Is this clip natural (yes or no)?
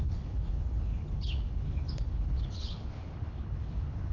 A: no